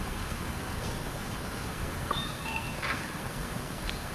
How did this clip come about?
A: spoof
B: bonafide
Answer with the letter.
A